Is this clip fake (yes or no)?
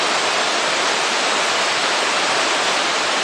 no